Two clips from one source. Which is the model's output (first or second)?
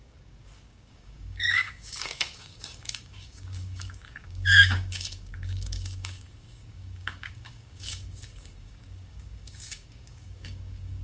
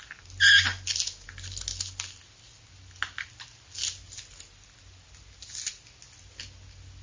first